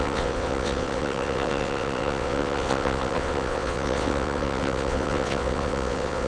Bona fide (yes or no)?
no